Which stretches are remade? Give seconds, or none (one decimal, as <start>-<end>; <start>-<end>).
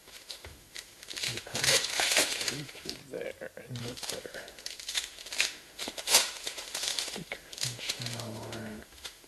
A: 0.0-3.0; 3.8-9.3